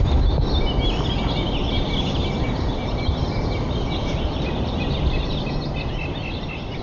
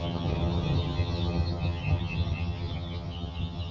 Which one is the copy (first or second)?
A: second